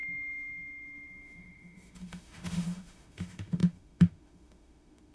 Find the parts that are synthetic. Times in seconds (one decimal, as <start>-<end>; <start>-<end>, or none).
0.0-5.1